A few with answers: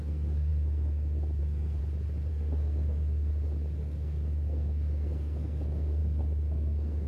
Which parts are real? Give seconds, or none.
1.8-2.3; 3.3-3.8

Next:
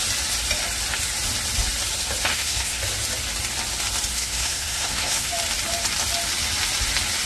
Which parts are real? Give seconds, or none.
0.0-2.3; 2.8-4.1; 5.3-7.3

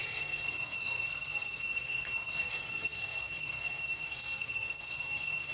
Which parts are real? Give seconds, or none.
none

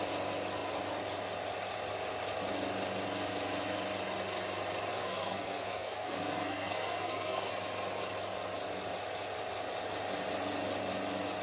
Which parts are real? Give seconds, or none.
0.0-4.9; 7.5-11.4